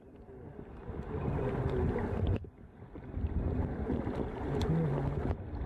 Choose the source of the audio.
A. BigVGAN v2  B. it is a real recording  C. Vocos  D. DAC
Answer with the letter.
B